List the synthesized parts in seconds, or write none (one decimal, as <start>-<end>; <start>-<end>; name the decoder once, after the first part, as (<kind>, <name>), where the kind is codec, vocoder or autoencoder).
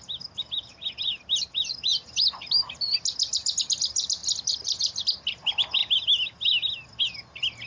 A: 1.9-2.5 (vocoder, BigVGAN v2)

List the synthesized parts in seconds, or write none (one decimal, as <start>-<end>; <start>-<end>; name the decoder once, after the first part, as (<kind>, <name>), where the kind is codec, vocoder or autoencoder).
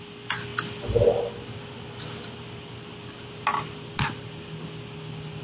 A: none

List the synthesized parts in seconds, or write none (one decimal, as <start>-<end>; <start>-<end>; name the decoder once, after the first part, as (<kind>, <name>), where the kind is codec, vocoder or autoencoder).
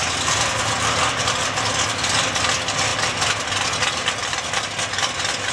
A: none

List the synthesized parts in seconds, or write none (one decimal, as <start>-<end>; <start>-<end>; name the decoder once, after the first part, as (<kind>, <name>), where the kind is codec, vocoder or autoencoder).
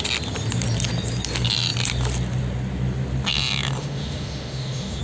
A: 3.8-5.0 (autoencoder, DAC-VAE)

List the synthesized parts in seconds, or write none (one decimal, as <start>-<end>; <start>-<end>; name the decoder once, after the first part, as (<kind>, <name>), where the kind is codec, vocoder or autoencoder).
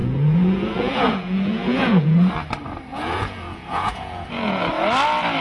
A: 0.0-2.3 (vocoder, Vocos); 2.9-4.6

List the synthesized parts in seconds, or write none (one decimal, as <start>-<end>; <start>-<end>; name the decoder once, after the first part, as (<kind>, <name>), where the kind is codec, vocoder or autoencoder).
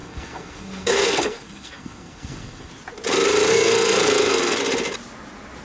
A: 0.0-2.7 (codec, SNAC); 3.5-4.6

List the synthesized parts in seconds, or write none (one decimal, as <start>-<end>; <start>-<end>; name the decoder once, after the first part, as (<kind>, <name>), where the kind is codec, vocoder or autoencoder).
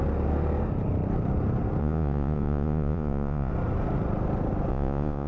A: 1.8-3.5 (vocoder, Vocos); 4.7-5.3